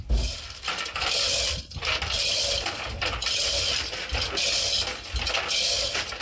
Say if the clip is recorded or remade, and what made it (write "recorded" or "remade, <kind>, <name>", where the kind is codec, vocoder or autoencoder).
recorded